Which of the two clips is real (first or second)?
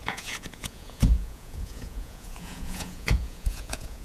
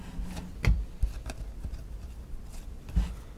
second